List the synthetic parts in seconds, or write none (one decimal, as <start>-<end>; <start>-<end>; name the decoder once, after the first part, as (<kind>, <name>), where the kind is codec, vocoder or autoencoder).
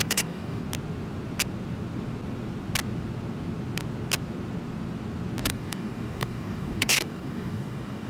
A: 0.0-0.6 (codec, DAC); 5.4-8.1